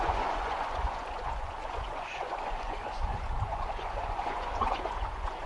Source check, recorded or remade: remade